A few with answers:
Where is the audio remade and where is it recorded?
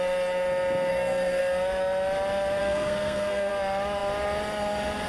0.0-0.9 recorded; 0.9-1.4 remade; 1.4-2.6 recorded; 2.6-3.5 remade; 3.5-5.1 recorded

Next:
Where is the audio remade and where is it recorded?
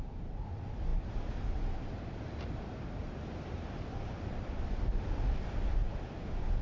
0.0-6.6 recorded